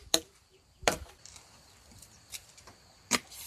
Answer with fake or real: fake